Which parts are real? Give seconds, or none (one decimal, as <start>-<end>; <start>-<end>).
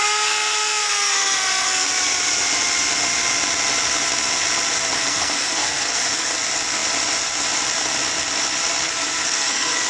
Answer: 1.9-5.0; 6.3-8.8